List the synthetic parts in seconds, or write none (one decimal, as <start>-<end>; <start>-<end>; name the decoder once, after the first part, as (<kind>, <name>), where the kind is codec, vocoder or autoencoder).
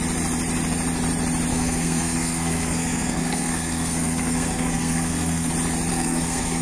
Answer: 1.5-5.5 (codec, SNAC); 5.9-6.6